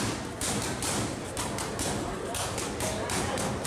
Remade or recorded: recorded